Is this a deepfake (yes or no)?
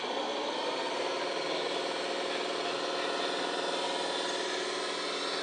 no